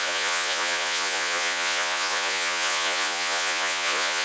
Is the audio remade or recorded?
remade